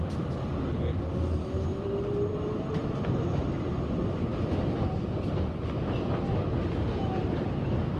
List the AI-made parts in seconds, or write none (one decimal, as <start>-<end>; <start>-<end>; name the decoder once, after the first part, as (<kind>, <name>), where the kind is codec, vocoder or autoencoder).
none